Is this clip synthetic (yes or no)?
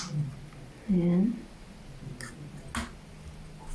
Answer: no